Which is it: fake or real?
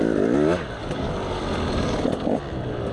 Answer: real